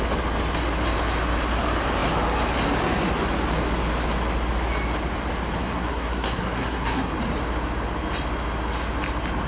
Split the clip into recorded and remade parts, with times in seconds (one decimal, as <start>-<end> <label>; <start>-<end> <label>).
0.0-5.6 recorded; 5.6-7.1 remade; 7.1-9.5 recorded